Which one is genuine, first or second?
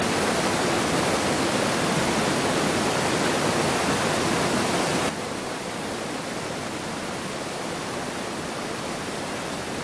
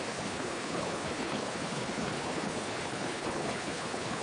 first